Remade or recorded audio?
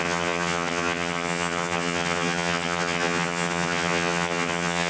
remade